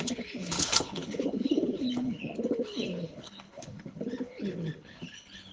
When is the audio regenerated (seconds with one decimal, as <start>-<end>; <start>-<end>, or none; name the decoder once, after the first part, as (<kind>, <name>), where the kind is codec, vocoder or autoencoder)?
0.0-5.5 (codec, HILCodec)